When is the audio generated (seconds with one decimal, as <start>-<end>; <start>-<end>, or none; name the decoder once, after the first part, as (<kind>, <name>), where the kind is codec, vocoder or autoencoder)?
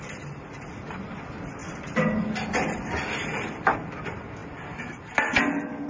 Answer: none